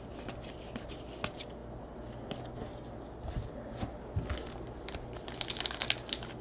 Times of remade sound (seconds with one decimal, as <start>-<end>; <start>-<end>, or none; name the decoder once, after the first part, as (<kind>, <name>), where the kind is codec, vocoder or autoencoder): none